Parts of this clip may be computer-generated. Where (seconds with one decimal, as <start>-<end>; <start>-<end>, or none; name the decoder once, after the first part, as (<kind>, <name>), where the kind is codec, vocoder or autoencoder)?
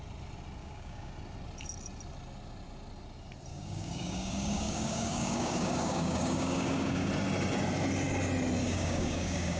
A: 0.6-1.1 (codec, DAC); 3.5-7.1; 8.6-9.6